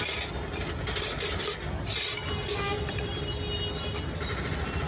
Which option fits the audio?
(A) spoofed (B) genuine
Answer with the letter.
B